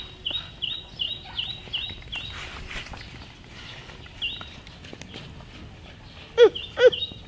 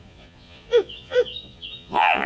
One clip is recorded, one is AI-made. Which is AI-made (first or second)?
second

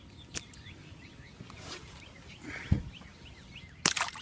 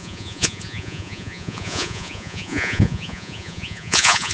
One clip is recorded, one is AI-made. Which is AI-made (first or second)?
second